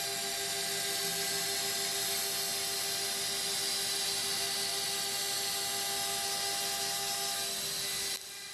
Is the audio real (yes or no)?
yes